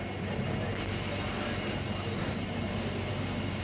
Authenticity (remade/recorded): recorded